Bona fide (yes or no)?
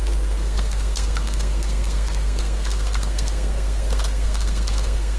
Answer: no